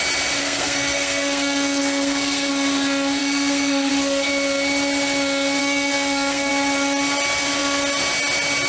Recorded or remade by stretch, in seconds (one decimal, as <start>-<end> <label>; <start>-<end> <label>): 0.0-0.4 recorded; 0.4-2.5 remade; 2.5-3.2 recorded; 3.2-3.9 remade; 3.9-5.6 recorded; 5.6-6.5 remade; 6.5-8.7 recorded